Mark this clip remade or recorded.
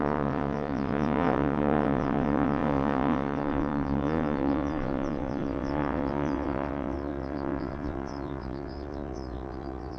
remade